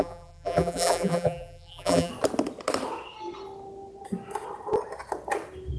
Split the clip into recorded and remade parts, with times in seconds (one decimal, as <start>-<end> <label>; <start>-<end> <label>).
0.0-2.1 remade; 2.1-5.8 recorded